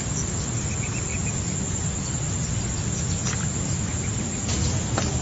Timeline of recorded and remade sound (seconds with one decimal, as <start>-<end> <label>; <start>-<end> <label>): 0.0-5.2 recorded